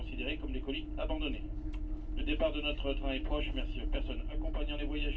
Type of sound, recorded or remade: recorded